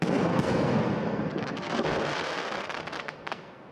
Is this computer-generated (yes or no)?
yes